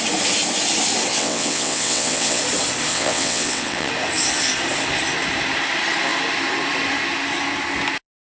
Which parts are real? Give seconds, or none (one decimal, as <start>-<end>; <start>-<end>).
0.0-1.1; 2.4-2.9; 3.9-8.4